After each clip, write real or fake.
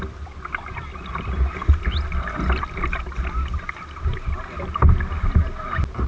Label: real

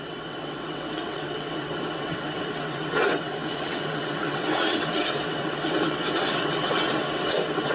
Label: fake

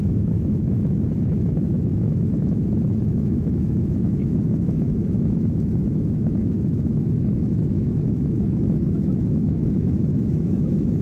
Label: fake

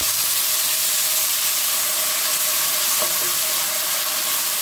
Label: real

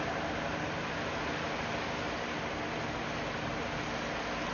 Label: real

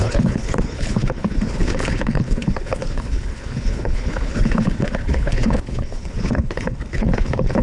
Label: fake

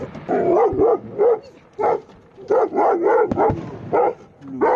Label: real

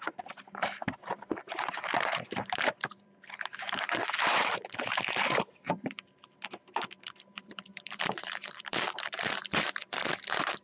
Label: fake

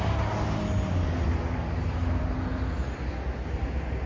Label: real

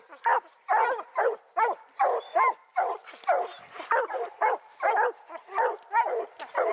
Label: real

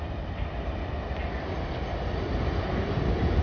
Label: real